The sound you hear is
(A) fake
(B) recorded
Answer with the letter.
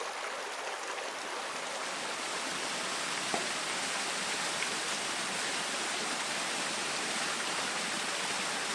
B